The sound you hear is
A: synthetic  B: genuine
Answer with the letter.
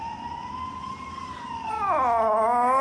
B